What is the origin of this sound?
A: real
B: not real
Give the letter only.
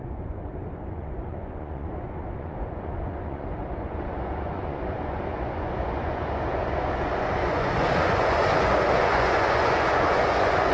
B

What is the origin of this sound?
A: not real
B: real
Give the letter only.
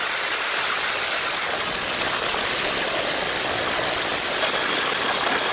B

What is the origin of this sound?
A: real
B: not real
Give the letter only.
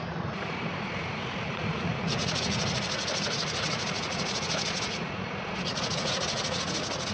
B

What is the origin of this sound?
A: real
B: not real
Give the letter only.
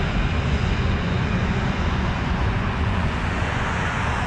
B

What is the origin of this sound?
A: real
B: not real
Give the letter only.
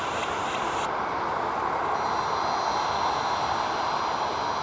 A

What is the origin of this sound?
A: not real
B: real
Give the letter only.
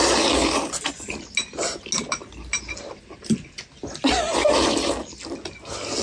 B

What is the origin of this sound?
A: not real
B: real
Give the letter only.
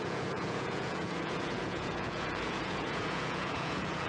A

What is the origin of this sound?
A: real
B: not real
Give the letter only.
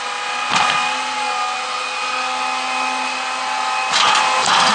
A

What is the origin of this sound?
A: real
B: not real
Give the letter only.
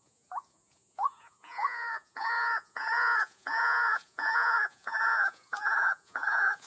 B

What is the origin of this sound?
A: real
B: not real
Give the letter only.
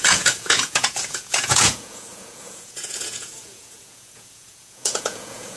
B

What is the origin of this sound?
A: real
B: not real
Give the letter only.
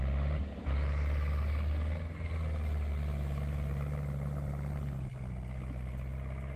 A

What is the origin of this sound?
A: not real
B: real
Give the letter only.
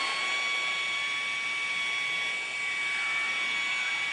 B